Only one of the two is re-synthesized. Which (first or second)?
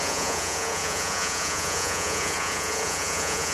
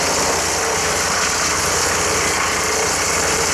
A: first